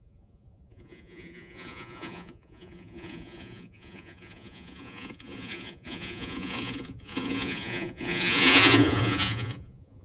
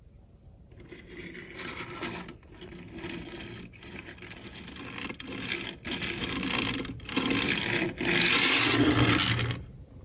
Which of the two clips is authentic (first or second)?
second